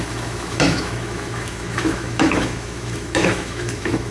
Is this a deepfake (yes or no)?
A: yes